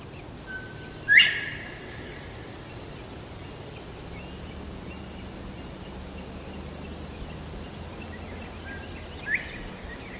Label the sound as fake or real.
real